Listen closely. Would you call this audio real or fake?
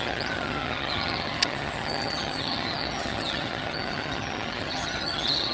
fake